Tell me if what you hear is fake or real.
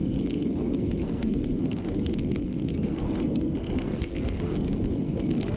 fake